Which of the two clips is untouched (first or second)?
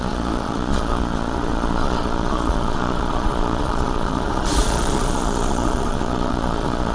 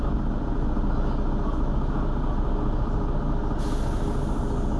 second